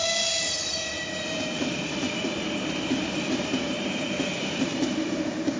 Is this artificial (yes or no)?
yes